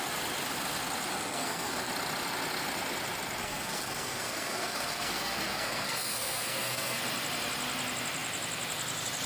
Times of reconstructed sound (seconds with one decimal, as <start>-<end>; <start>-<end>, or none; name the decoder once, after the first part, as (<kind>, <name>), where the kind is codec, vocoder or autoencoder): 1.1-1.9 (codec, SNAC); 3.4-7.0